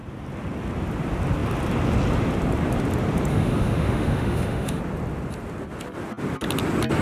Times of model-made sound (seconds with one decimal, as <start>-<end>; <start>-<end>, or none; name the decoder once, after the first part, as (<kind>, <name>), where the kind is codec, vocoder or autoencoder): 3.3-4.8 (autoencoder, DAC-VAE)